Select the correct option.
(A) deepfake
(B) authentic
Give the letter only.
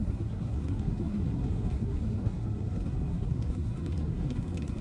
A